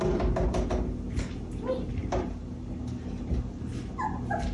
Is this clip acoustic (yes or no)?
yes